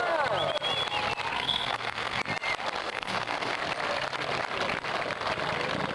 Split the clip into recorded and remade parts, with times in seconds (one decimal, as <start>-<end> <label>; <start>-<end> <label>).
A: 0.0-1.3 recorded; 1.3-2.2 remade; 2.2-2.8 recorded; 2.8-3.6 remade; 3.6-5.9 recorded